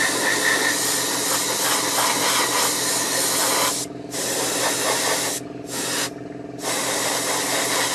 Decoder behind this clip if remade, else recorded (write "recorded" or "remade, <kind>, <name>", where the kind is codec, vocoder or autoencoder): recorded